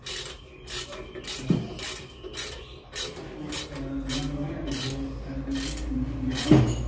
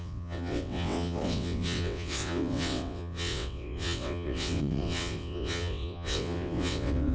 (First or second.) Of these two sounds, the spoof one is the second